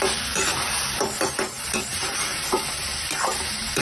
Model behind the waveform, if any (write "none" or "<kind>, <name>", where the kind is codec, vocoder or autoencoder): vocoder, BigVGAN v2